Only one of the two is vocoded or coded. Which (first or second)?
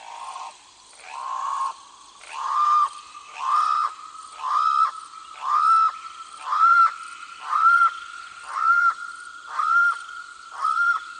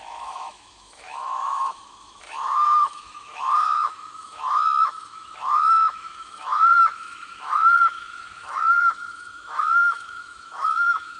second